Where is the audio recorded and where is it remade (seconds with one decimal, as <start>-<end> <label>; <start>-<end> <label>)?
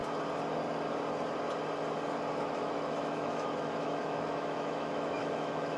0.0-2.4 recorded; 2.4-5.8 remade